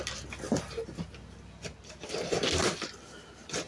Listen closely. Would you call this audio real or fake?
real